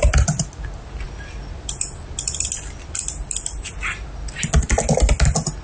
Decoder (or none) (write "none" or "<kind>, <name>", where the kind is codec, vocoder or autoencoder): none